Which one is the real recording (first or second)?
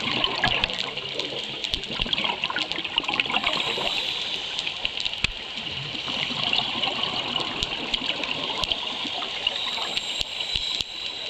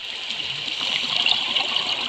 second